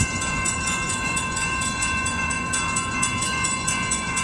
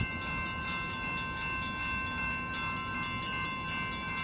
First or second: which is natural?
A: second